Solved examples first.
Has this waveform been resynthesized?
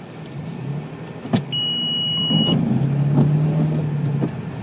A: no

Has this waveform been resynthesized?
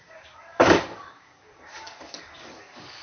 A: yes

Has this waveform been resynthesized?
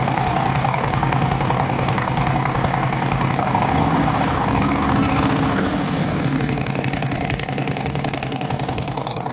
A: yes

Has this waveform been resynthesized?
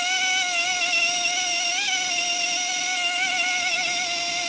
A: no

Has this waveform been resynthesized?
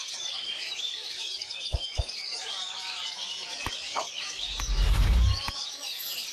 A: yes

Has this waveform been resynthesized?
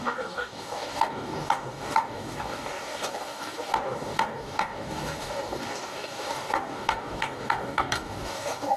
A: yes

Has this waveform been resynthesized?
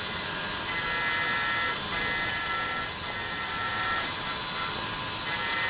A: no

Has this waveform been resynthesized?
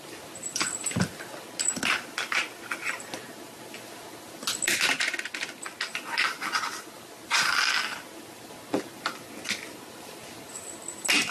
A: no